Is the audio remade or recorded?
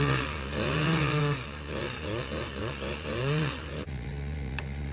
remade